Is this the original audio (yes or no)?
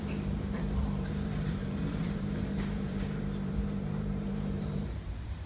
no